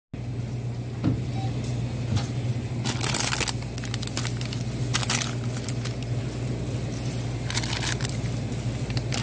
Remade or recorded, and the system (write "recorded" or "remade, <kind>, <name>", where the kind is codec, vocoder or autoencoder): recorded